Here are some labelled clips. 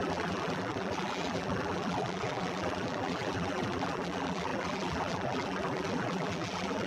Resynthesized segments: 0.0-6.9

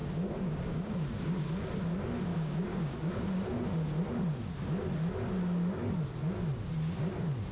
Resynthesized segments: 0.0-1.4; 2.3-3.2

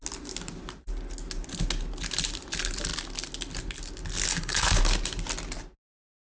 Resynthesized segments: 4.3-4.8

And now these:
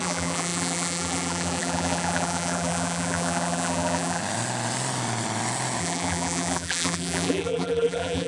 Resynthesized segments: 0.0-4.2; 5.8-8.3